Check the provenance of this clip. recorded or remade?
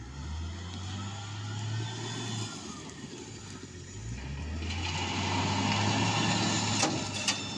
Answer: recorded